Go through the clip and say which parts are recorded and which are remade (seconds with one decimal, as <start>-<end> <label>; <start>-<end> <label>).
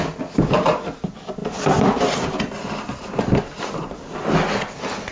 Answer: 0.0-1.4 recorded; 1.4-2.8 remade; 2.8-5.1 recorded